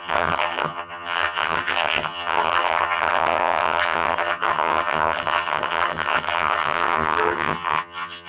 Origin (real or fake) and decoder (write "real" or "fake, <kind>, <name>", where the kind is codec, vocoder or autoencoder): fake, vocoder, HiFi-GAN